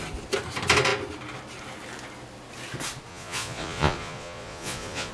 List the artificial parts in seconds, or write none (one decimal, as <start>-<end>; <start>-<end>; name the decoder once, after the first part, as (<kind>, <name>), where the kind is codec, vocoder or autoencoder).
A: 3.1-5.1 (vocoder, Vocos)